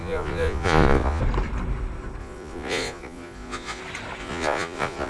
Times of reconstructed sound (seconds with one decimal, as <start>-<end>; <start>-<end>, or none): 0.0-1.2; 2.2-3.8; 4.2-5.1